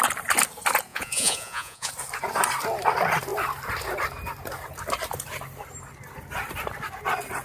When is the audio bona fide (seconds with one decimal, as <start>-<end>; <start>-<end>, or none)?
0.0-0.9; 1.9-7.4